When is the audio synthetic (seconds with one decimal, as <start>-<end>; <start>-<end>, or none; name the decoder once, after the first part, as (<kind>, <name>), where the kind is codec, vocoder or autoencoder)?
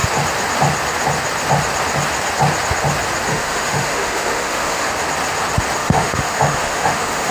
3.3-4.9 (autoencoder, DAC-VAE); 5.8-7.3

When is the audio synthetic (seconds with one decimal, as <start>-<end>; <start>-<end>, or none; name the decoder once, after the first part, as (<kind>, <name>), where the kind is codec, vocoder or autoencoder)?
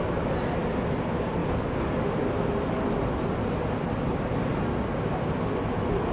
none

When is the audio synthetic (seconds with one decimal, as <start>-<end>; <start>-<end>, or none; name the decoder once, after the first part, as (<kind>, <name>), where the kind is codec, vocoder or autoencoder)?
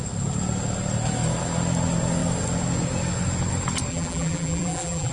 3.9-5.1 (vocoder, BigVGAN v2)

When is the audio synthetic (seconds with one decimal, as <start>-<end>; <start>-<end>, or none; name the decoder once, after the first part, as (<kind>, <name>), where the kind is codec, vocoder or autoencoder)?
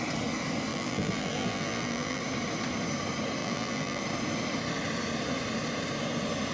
0.7-2.2 (vocoder, BigVGAN v2); 3.4-4.0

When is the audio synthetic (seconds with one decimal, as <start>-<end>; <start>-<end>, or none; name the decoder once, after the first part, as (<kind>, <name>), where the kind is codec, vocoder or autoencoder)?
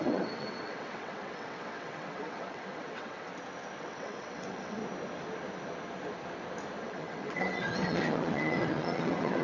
0.0-3.3 (vocoder, WaveNeXt); 3.8-4.8; 6.8-9.4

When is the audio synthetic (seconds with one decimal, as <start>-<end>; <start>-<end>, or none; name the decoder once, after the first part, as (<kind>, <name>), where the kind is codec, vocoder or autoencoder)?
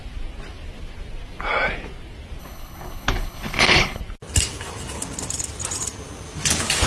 2.4-4.0 (codec, HILCodec)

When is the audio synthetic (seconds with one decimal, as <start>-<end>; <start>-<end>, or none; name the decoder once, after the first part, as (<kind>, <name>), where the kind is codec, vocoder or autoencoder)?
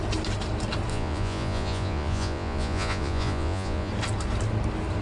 0.9-3.9 (vocoder, Vocos)